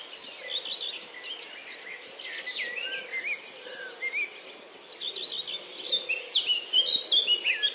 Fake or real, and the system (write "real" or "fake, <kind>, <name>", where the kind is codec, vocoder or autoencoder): real